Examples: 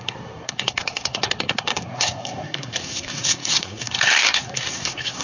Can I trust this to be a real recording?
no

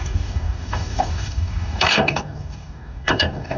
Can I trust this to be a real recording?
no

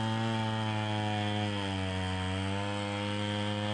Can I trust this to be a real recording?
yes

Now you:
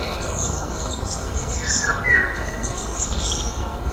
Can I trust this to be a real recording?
no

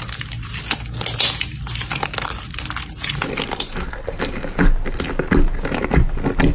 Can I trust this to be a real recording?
yes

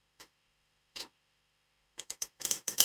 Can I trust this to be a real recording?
no